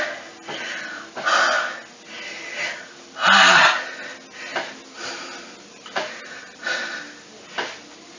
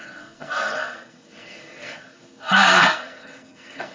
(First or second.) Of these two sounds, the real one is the first